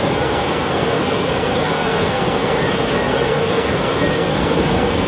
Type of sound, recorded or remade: remade